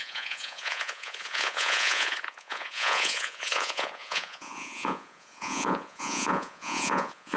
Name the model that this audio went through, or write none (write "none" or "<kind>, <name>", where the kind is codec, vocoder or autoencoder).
vocoder, Vocos